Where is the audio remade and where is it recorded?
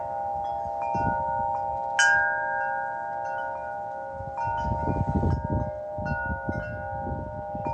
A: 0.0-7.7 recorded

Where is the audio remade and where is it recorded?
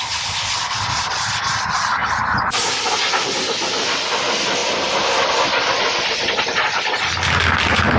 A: 0.0-8.0 recorded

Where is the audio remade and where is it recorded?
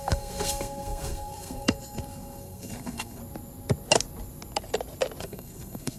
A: 0.0-3.2 remade; 3.2-5.2 recorded; 5.2-6.0 remade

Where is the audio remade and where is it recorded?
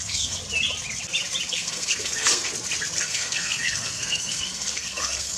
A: 0.0-0.4 remade; 0.4-1.5 recorded; 1.5-2.5 remade; 2.5-3.0 recorded; 3.0-5.4 remade